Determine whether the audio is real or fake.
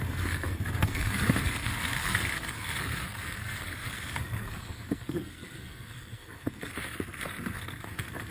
fake